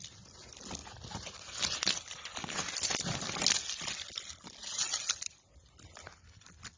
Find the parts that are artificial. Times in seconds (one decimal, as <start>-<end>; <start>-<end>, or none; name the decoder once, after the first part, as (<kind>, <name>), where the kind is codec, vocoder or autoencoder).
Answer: none